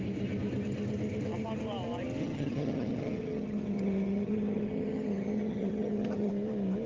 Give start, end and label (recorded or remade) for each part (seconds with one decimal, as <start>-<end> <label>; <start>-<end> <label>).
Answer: 0.0-2.2 recorded; 2.2-6.3 remade; 6.3-6.9 recorded